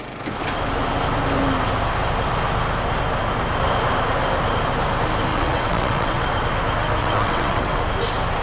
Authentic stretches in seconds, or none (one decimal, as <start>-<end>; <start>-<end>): 0.0-5.3; 6.2-7.0; 7.8-8.4